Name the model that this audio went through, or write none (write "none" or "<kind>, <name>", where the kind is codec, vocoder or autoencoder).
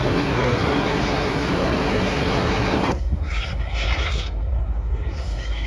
codec, SNAC